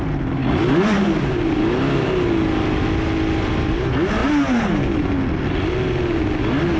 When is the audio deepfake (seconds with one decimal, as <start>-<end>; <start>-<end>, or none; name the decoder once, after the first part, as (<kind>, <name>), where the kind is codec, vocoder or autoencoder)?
none